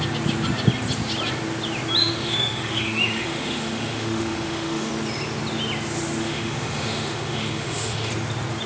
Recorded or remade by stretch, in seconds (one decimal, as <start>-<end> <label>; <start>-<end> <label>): 0.0-2.0 recorded; 2.0-4.9 remade; 4.9-6.2 recorded; 6.2-8.1 remade; 8.1-8.7 recorded